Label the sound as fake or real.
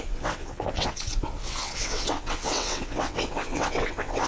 fake